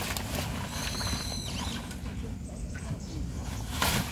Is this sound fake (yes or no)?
no